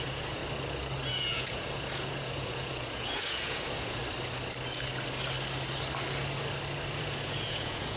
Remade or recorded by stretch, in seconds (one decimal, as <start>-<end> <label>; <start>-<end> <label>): 0.0-0.4 remade; 0.4-1.1 recorded; 1.1-4.0 remade; 4.0-7.0 recorded; 7.0-8.0 remade